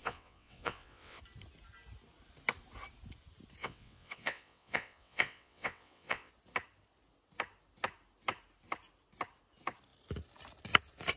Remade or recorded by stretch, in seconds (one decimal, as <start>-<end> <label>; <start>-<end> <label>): 0.0-1.2 remade; 1.2-3.6 recorded; 3.6-6.3 remade; 6.3-11.2 recorded